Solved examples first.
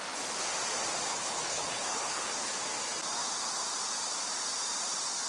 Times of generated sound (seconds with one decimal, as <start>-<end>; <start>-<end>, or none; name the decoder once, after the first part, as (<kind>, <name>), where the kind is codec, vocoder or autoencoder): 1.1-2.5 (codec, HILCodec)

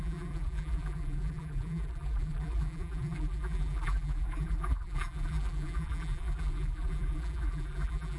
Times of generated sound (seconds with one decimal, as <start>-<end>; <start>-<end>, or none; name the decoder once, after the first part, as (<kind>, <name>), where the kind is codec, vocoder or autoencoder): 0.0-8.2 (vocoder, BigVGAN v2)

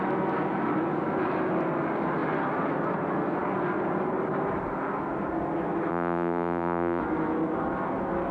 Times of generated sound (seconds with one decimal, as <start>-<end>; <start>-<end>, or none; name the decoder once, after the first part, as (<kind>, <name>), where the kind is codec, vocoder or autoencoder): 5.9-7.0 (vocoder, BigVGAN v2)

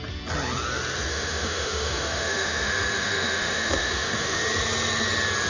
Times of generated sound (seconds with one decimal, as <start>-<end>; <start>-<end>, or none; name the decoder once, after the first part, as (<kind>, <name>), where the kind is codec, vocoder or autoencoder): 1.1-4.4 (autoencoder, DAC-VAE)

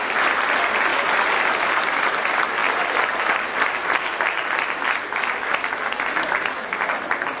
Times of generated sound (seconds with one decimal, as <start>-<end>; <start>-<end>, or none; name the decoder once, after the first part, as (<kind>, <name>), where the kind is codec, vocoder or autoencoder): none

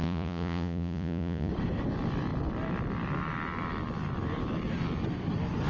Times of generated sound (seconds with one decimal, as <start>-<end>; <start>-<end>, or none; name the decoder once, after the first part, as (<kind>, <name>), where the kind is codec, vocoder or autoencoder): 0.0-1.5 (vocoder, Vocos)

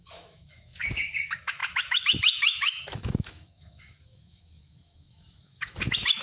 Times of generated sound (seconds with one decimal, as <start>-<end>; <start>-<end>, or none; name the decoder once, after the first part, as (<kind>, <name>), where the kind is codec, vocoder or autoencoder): 0.0-6.2 (autoencoder, DAC-VAE)

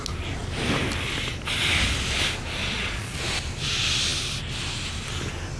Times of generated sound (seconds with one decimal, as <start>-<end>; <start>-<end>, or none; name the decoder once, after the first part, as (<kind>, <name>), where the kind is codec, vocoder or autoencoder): 2.6-3.2 (vocoder, Vocos)